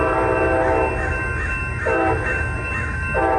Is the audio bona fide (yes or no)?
yes